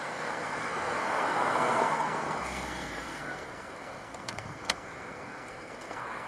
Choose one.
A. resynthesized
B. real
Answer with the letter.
A